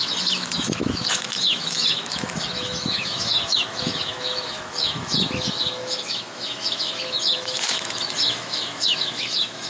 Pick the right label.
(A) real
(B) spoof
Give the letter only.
B